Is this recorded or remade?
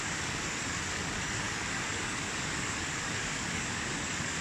remade